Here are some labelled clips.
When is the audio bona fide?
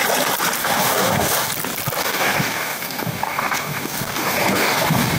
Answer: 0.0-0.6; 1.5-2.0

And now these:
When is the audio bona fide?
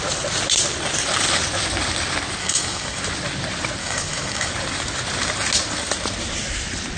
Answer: 0.0-2.4; 3.0-3.8; 4.5-7.0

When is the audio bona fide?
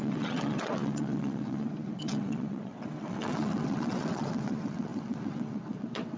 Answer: none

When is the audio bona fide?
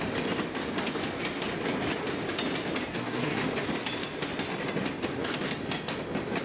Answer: 0.0-2.9; 3.4-6.4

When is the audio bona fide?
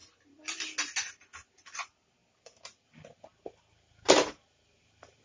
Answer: 0.0-5.2